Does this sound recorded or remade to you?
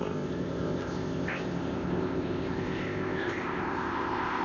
remade